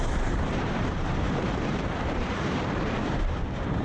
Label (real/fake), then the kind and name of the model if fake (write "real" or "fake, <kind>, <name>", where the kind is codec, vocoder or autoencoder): fake, vocoder, BigVGAN v2